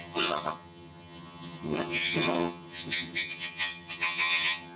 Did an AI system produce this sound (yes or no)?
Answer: yes